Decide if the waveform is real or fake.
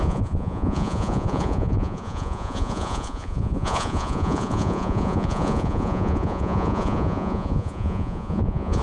fake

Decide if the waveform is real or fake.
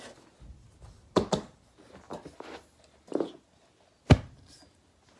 real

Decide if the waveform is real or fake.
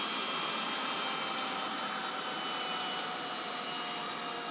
real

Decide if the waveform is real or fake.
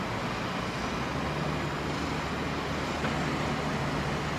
real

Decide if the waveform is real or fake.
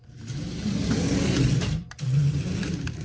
real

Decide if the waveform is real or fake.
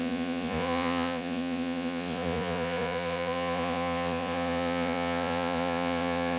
fake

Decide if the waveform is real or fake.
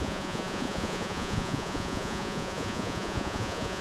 fake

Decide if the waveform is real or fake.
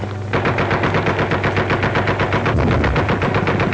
real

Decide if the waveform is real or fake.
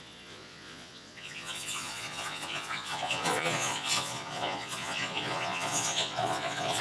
fake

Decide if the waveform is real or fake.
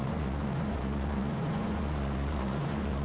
fake